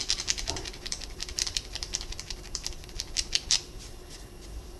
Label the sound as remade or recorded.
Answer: remade